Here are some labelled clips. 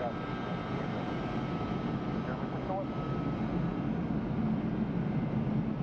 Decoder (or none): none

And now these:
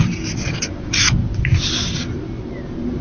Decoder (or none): none